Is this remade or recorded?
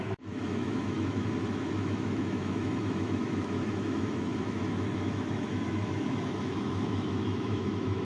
remade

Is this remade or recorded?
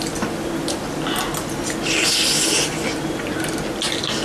recorded